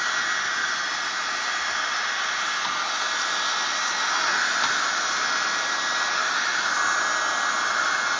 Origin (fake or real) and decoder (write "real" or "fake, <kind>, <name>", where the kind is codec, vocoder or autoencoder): real